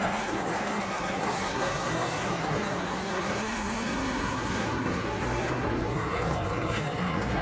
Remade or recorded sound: remade